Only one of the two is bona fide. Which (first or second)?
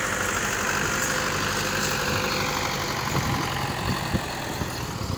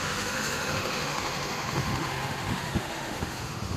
first